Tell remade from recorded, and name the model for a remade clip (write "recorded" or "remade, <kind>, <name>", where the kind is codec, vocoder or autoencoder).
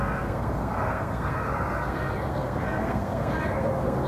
remade, codec, SNAC